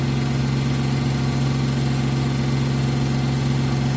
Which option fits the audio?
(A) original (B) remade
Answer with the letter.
A